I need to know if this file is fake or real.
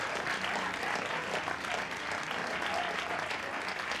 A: real